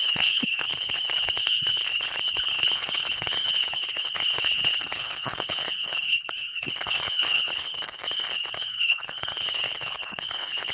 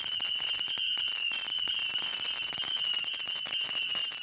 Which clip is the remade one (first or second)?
first